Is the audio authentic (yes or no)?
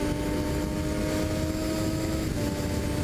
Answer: yes